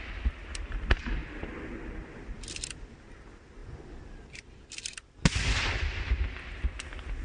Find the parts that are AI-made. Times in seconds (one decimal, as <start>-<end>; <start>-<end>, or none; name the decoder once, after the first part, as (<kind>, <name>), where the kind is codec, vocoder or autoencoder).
none